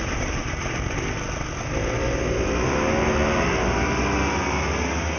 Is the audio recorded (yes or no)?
yes